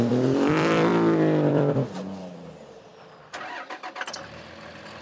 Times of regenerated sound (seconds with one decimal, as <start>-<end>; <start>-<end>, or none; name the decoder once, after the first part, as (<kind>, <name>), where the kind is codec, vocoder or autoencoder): 0.0-0.9 (vocoder, BigVGAN v2); 1.5-2.9; 4.2-5.0